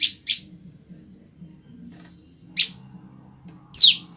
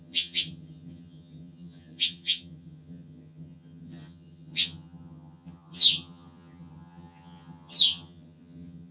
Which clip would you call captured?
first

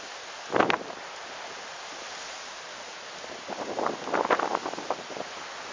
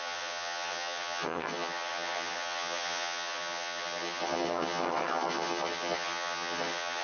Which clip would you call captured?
first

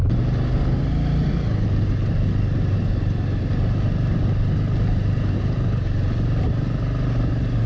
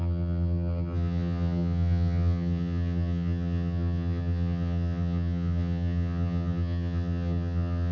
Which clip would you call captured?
first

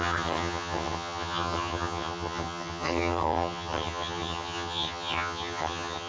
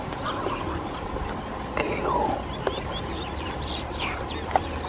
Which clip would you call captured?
second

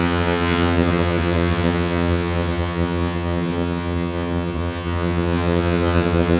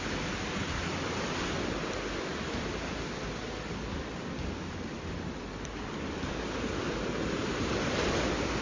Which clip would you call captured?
second